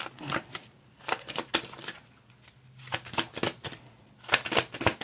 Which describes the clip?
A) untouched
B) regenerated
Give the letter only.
A